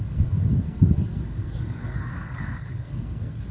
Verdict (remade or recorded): remade